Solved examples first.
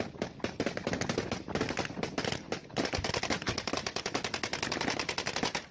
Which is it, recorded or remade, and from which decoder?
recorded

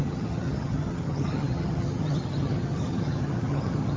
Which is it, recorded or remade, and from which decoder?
remade, vocoder, HiFi-GAN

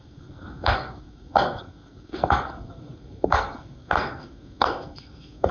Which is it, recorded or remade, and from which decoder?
remade, codec, SNAC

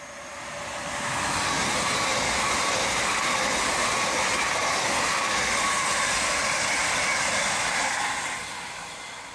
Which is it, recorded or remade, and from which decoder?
recorded